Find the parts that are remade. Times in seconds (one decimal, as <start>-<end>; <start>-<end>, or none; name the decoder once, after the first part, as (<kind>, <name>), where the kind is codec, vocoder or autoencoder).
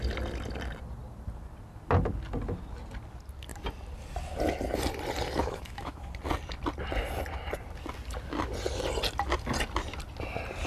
5.4-6.1 (autoencoder, DAC-VAE)